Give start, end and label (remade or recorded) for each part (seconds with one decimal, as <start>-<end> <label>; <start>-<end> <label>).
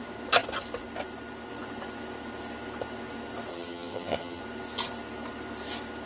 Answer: 0.0-3.5 recorded; 3.5-4.4 remade; 4.4-6.1 recorded